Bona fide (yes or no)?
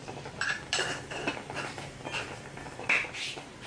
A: yes